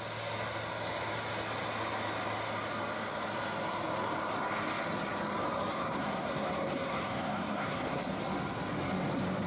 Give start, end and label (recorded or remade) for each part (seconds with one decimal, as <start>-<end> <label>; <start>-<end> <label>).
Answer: 0.0-5.7 recorded; 5.7-8.0 remade; 8.0-9.5 recorded